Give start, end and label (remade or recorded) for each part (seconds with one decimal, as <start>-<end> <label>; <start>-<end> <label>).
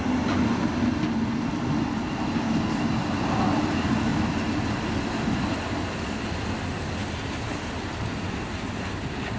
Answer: 0.0-9.4 recorded